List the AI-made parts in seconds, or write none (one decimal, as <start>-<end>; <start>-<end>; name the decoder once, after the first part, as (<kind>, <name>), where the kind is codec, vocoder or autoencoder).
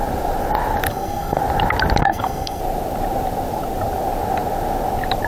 0.9-1.4 (codec, SNAC); 2.0-2.6